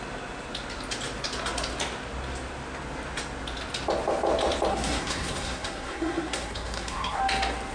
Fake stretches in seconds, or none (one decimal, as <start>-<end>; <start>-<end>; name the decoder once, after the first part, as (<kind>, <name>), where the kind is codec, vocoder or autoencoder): 4.7-7.2 (codec, SNAC)